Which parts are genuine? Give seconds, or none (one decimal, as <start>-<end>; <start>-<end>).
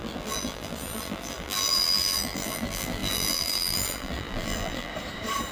4.9-5.5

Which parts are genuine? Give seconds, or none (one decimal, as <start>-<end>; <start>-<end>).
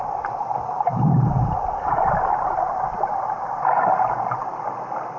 0.0-5.2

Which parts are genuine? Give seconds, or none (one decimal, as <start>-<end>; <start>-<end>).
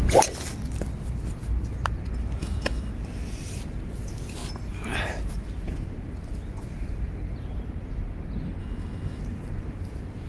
0.0-2.4; 2.9-8.6; 9.2-10.3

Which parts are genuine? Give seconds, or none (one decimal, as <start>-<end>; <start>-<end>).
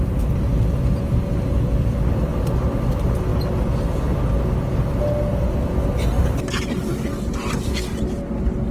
0.0-8.7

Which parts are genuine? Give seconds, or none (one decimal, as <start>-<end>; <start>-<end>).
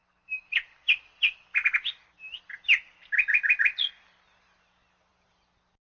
0.5-5.9